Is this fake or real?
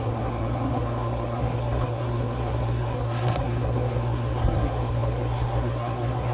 fake